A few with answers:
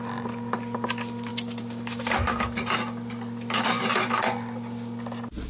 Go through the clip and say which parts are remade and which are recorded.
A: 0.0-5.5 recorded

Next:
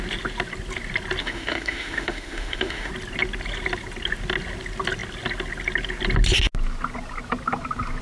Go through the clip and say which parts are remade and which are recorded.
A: 0.0-1.2 recorded; 1.2-2.9 remade; 2.9-8.0 recorded

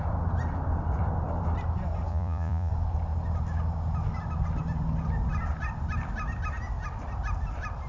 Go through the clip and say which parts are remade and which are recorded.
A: 0.0-2.1 recorded; 2.1-2.7 remade; 2.7-7.9 recorded

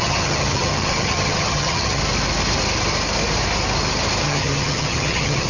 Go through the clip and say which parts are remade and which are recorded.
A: 0.0-2.0 remade; 2.0-4.2 recorded; 4.2-5.5 remade

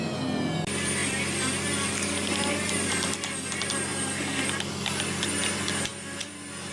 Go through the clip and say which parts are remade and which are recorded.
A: 0.0-6.7 recorded